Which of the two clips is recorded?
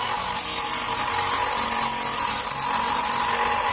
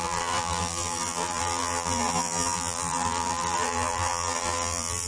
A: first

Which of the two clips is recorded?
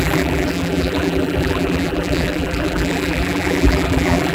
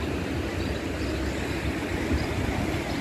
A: second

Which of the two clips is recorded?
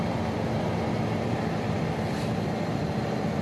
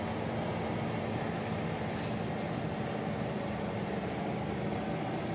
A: second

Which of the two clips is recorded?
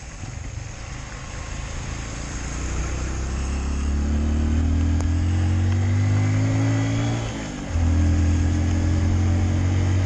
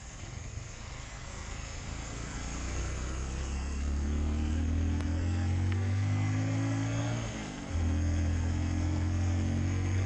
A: first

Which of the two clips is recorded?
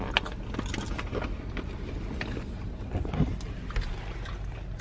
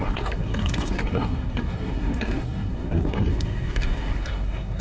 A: first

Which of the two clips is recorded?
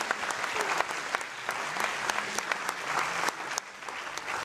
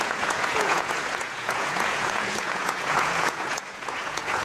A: first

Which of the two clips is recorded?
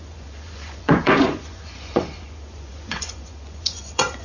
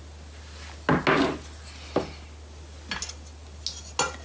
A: second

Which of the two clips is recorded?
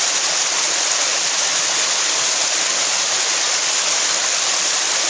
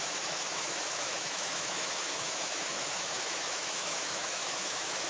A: first